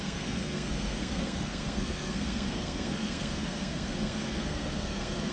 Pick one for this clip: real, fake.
fake